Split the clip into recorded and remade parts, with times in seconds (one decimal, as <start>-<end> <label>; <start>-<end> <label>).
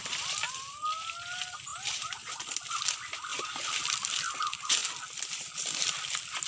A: 0.0-3.3 recorded; 3.3-4.1 remade; 4.1-6.5 recorded